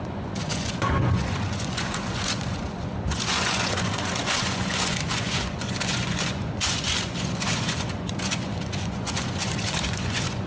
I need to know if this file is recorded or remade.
remade